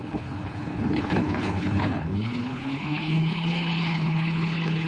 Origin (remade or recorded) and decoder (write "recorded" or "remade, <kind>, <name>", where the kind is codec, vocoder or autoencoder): remade, codec, HILCodec